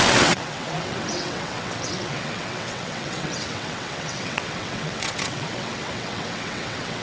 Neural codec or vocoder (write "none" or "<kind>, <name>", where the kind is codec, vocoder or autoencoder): vocoder, WaveNeXt